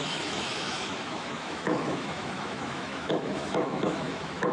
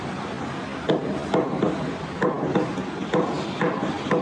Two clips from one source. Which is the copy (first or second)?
first